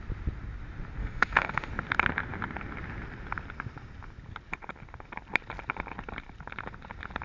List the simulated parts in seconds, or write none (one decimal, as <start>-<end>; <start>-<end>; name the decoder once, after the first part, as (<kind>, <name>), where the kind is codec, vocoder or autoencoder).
1.0-1.7 (autoencoder, DAC-VAE)